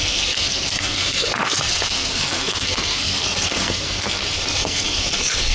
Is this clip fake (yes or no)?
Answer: yes